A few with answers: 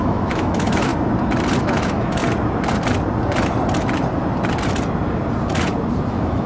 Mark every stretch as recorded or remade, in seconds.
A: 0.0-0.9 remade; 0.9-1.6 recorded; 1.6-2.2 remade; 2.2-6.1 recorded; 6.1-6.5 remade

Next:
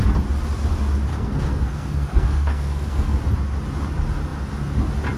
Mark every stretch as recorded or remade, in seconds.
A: 0.0-1.1 recorded; 1.1-3.2 remade; 3.2-5.2 recorded

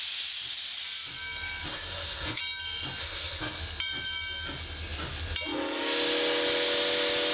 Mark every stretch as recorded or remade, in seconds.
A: 0.0-1.7 recorded; 1.7-2.4 remade; 2.4-3.0 recorded; 3.0-3.6 remade; 3.6-7.3 recorded

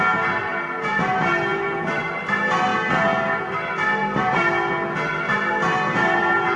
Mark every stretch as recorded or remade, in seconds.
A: 0.0-1.5 recorded; 1.5-2.3 remade; 2.3-6.6 recorded

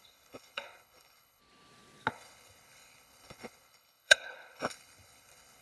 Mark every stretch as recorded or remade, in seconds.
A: 0.0-1.4 remade; 1.4-2.1 recorded; 2.1-5.6 remade

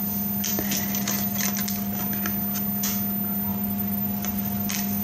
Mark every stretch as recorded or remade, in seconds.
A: 0.0-0.5 recorded; 0.5-2.0 remade; 2.0-3.5 recorded; 3.5-5.0 remade

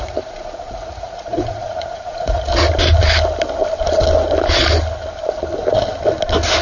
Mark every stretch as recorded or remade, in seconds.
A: 0.0-2.5 remade; 2.5-6.6 recorded

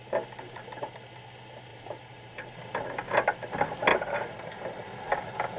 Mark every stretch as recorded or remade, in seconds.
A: 0.0-1.7 recorded; 1.7-2.5 remade; 2.5-3.9 recorded; 3.9-4.8 remade; 4.8-5.6 recorded